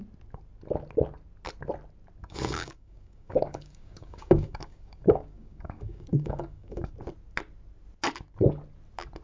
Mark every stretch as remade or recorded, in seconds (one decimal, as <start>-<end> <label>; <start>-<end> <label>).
0.0-2.2 recorded; 2.2-6.9 remade; 6.9-9.2 recorded